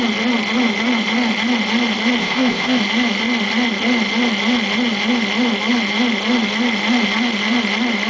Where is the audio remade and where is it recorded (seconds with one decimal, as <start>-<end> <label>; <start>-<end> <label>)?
0.0-2.2 recorded; 2.2-2.8 remade; 2.8-8.1 recorded